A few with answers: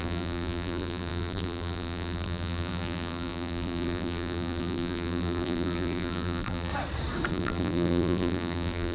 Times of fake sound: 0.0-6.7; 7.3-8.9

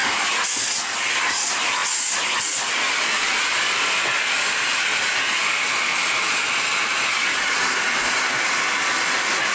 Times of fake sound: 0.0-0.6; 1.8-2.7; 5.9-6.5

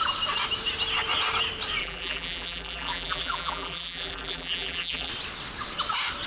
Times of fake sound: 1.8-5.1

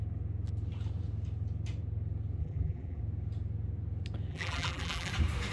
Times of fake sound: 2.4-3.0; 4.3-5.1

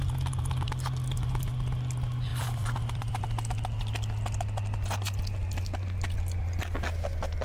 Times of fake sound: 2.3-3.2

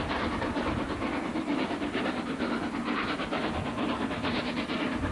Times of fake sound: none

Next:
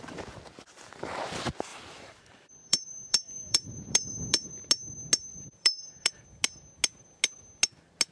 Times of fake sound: 1.7-4.5; 5.3-6.1